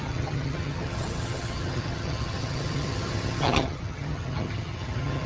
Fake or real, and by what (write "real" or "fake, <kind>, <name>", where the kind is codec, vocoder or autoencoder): fake, vocoder, HiFi-GAN